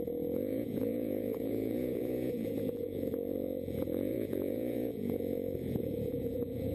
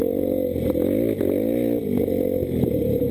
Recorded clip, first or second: second